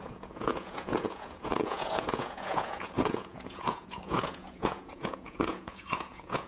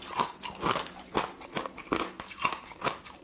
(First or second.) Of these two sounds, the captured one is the second